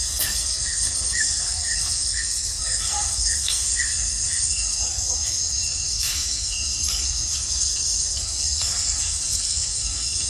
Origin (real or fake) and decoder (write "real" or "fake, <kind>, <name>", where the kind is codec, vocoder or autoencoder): fake, codec, SNAC